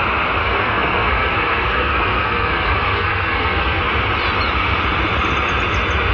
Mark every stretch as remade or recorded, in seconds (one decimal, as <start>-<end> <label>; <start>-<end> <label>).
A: 0.0-0.4 recorded; 0.4-3.8 remade; 3.8-6.1 recorded